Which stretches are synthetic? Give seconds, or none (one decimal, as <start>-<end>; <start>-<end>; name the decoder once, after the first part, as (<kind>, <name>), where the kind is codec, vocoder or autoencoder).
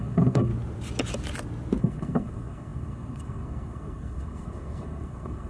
0.0-0.5 (codec, SNAC); 1.8-5.5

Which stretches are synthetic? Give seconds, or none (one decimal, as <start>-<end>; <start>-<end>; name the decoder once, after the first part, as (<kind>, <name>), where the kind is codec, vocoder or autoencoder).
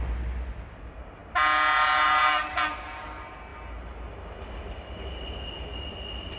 none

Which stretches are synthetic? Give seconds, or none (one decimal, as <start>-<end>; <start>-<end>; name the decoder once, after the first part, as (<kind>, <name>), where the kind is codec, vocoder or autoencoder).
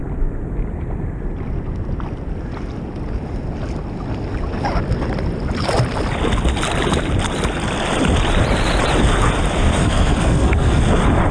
9.8-10.8 (codec, SNAC)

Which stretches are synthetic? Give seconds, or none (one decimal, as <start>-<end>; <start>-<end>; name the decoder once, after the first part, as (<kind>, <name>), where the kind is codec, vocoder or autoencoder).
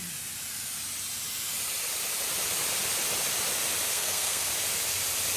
3.9-4.5 (codec, SNAC)